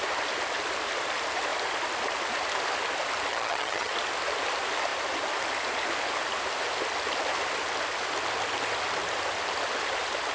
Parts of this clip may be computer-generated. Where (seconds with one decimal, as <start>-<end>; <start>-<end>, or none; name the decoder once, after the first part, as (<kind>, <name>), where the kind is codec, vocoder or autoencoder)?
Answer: 3.3-3.9 (vocoder, HiFi-GAN)